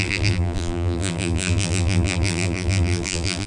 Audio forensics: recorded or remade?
remade